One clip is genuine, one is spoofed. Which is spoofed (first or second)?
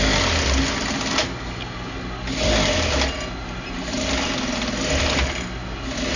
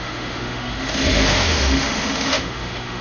second